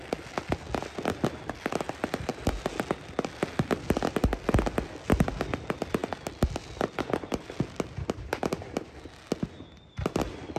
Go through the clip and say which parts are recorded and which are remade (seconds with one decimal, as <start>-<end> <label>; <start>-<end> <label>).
0.0-10.6 recorded